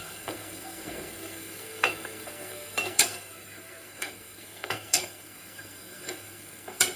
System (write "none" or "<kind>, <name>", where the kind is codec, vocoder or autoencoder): codec, SNAC